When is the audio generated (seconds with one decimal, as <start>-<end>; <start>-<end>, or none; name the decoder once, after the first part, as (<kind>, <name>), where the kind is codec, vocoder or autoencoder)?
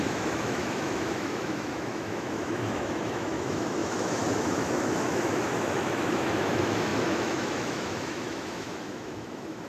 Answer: 0.0-9.7 (autoencoder, DAC-VAE)